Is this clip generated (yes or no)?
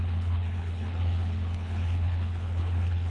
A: yes